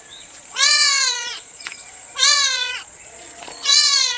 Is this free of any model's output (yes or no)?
no